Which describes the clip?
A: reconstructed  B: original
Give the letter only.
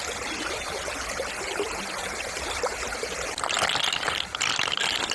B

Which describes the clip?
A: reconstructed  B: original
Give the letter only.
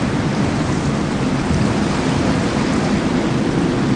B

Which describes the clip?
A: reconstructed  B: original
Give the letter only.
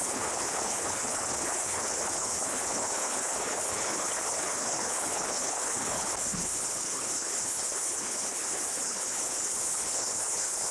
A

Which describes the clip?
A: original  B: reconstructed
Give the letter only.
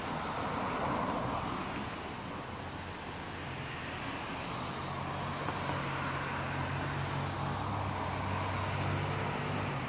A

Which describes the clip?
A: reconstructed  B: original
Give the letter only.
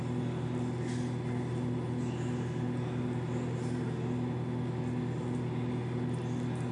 B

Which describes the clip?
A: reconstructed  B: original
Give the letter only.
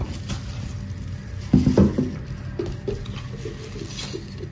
B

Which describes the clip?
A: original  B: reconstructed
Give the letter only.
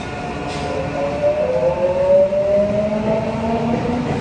A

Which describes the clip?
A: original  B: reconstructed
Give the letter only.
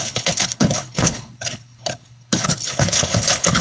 B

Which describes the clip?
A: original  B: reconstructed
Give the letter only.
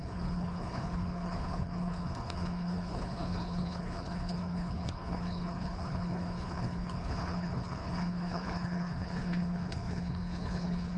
B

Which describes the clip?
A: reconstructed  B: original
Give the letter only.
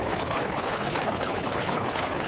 A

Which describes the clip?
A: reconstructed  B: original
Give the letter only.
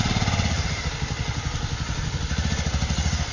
B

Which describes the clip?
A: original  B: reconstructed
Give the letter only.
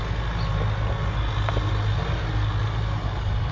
A